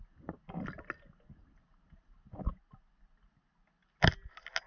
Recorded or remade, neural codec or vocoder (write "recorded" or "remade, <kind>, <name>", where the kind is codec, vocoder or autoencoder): recorded